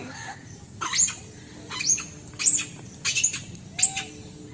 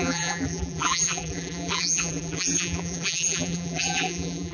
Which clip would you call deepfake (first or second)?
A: second